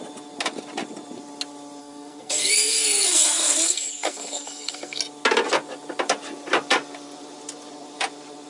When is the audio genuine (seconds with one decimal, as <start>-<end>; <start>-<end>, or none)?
0.0-1.8; 5.0-8.5